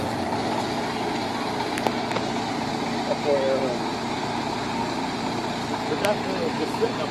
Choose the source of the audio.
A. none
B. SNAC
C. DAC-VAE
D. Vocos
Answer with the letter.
A